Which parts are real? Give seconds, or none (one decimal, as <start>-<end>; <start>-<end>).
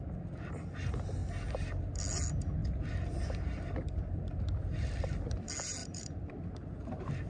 0.0-5.8; 6.3-7.3